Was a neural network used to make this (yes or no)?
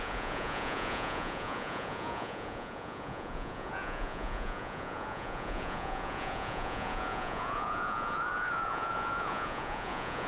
yes